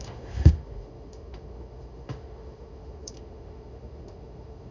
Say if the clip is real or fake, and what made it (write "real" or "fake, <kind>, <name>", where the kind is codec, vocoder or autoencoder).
fake, autoencoder, DAC-VAE